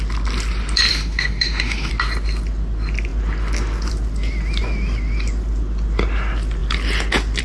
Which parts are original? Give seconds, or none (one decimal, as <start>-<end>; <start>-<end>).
0.0-0.9; 1.9-7.4